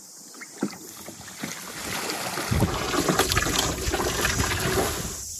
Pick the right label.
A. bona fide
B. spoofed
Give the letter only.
A